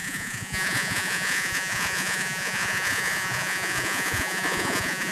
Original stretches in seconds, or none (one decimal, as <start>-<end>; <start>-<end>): none